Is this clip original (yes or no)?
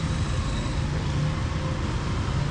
yes